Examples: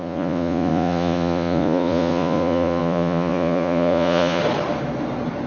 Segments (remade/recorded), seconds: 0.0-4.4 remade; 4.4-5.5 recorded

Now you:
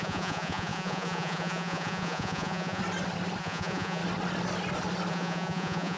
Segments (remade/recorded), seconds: 0.0-2.8 remade; 2.8-3.4 recorded; 3.4-4.0 remade; 4.0-5.1 recorded; 5.1-6.0 remade

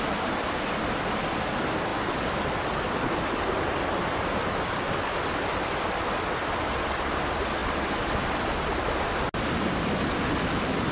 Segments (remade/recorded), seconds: 0.0-10.9 recorded